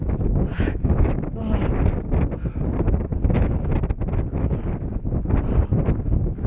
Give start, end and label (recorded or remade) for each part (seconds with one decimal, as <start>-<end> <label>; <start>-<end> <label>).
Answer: 0.0-0.5 recorded; 0.5-1.4 remade; 1.4-6.5 recorded